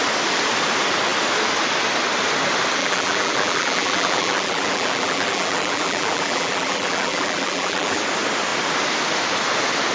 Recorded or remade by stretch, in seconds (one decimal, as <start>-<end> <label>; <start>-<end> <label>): 0.0-2.8 recorded; 2.8-8.0 remade; 8.0-9.9 recorded